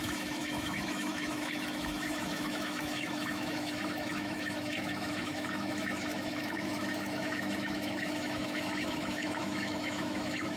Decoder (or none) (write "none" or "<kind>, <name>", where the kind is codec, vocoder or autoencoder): autoencoder, DAC-VAE